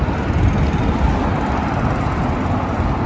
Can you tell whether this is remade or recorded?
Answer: recorded